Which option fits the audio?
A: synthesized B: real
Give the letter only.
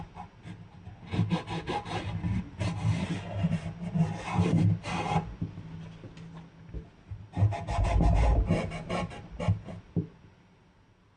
B